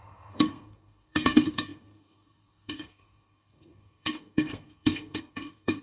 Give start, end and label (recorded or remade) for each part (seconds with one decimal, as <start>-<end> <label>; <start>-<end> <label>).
0.0-5.8 remade